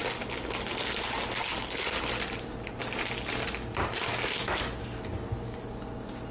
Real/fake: real